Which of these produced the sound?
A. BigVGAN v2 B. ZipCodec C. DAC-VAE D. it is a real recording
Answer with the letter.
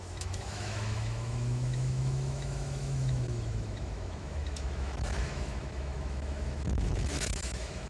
C